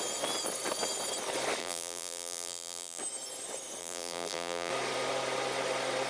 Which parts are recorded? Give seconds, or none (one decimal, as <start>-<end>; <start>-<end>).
0.0-1.6; 3.0-3.8; 4.7-6.1